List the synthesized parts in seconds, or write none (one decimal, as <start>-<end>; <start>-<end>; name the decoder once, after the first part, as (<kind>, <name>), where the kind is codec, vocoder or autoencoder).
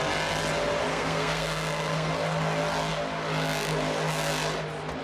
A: 0.9-2.1 (codec, SNAC)